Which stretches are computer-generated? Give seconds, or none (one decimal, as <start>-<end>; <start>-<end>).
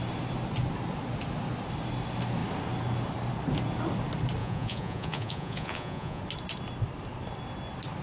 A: 4.4-6.2